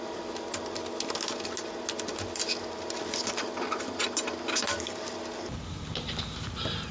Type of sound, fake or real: real